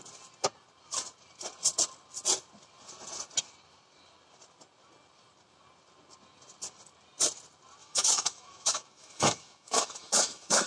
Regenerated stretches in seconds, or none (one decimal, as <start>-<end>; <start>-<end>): 7.8-10.7